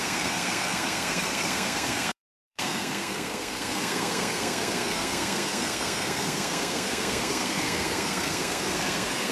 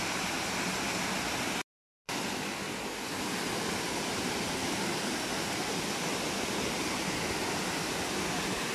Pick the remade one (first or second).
first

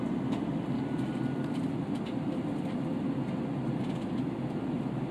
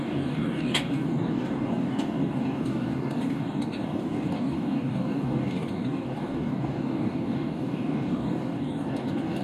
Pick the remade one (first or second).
second